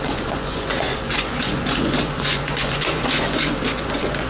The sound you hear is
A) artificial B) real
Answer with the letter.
A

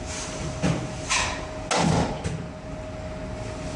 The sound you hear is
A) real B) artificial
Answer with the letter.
A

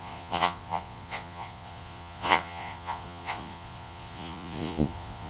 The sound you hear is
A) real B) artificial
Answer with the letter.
B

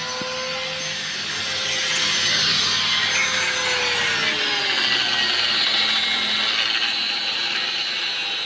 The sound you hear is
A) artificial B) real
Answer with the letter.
B